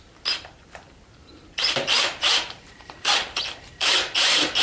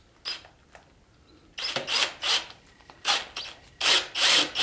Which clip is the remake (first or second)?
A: first